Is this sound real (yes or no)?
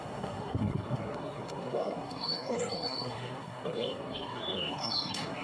no